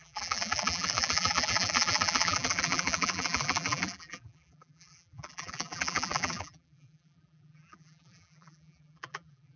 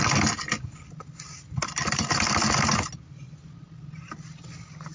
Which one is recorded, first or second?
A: second